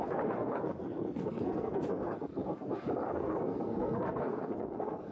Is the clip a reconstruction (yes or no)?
yes